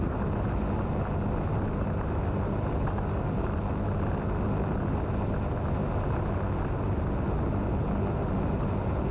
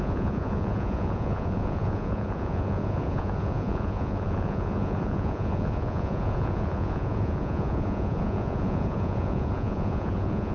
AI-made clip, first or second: second